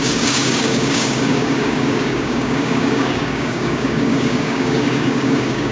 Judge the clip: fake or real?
fake